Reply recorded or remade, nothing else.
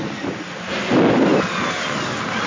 recorded